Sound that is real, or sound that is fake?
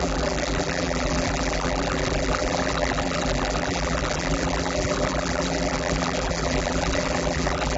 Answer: fake